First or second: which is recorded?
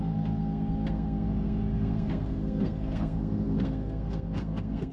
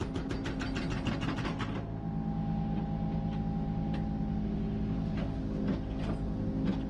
second